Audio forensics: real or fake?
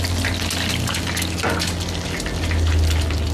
real